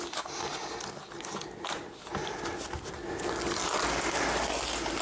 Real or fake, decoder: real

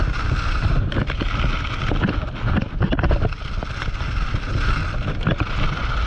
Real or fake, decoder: real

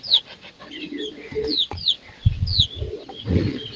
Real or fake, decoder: fake, vocoder, WaveNeXt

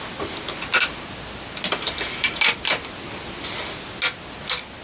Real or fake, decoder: real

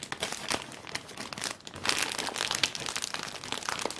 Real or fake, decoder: real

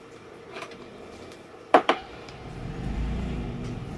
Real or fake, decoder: fake, vocoder, BigVGAN v2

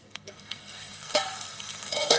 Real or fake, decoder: fake, codec, SNAC